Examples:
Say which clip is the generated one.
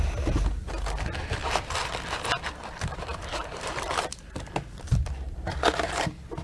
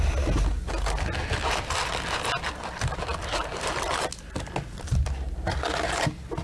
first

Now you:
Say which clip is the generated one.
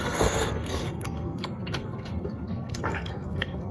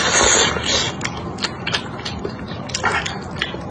first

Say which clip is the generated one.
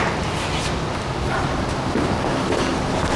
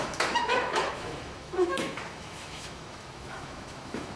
second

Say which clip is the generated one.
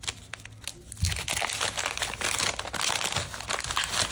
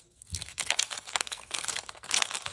second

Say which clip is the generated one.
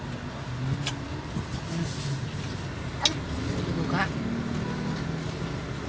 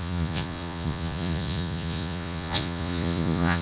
second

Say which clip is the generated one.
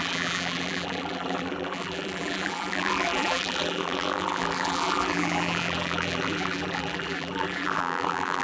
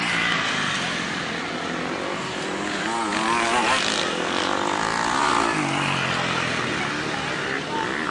first